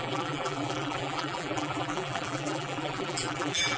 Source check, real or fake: fake